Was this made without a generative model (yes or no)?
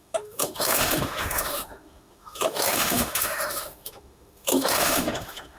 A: no